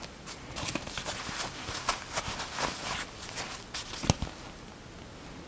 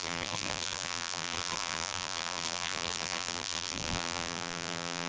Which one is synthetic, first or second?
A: second